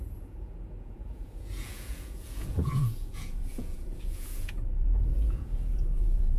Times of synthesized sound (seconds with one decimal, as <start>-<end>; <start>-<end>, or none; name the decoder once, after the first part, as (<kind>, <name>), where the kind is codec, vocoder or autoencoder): 0.0-6.4 (vocoder, Vocos)